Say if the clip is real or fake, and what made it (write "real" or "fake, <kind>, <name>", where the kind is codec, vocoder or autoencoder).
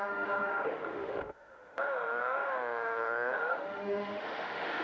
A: fake, autoencoder, DAC-VAE